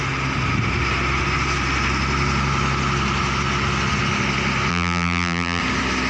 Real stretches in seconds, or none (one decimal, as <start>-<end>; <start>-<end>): 0.0-4.7; 5.6-6.1